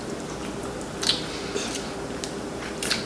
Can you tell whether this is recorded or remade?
recorded